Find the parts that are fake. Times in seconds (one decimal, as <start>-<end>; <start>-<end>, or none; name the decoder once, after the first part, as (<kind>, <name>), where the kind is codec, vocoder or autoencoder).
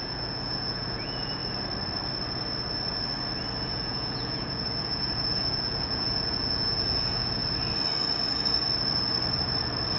0.0-1.4 (vocoder, Vocos); 3.6-7.4